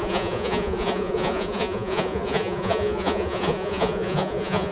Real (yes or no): no